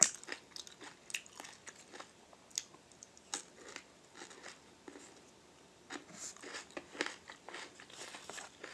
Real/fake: real